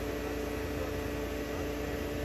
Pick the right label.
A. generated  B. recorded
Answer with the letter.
B